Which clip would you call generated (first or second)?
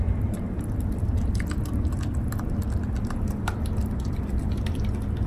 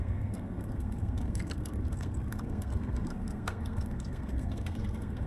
second